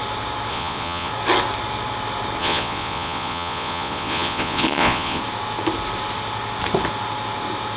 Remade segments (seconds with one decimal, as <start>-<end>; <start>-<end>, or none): 0.5-1.1; 2.4-5.2